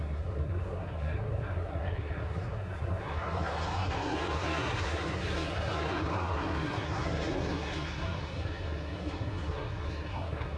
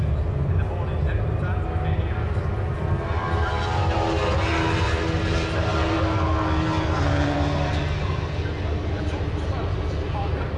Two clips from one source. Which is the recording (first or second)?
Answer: second